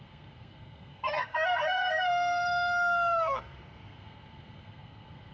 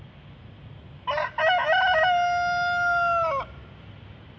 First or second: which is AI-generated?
first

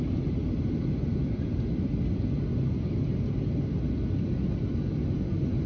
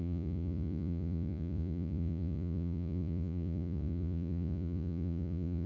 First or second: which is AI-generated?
second